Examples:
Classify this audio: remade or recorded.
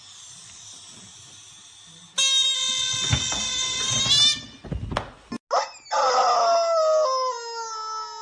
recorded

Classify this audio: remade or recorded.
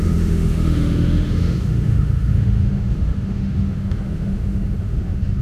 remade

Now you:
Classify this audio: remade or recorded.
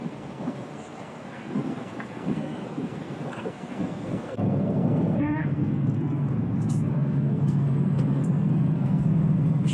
remade